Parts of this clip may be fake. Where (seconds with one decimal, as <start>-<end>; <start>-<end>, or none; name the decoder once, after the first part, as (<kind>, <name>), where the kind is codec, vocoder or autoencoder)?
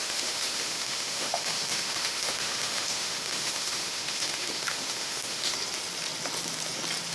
0.0-5.5 (autoencoder, DAC-VAE)